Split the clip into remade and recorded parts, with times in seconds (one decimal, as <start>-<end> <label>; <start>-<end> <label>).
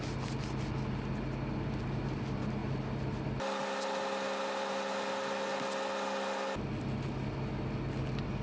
0.0-8.4 recorded